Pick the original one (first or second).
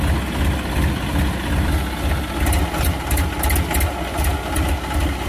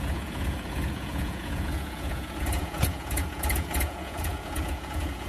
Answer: first